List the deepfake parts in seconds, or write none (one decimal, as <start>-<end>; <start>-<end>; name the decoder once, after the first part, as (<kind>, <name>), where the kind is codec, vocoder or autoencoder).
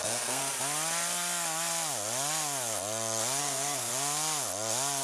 0.0-0.4 (codec, SNAC); 3.4-3.9